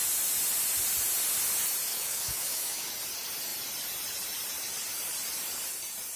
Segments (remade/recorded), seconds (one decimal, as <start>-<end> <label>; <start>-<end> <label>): 0.0-1.9 recorded; 1.9-2.9 remade; 2.9-6.2 recorded